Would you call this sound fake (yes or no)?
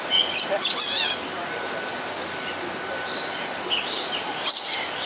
yes